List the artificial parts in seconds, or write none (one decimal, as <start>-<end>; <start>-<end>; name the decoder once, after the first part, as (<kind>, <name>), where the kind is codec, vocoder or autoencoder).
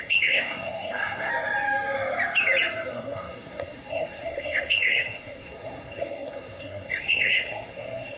0.0-1.3 (codec, SNAC); 2.9-8.2